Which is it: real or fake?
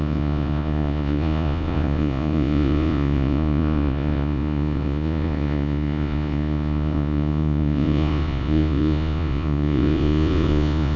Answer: fake